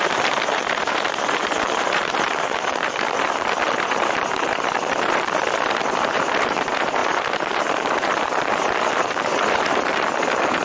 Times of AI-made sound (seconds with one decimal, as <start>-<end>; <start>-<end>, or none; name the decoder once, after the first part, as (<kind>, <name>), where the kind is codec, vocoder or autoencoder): 0.0-10.6 (vocoder, BigVGAN v2)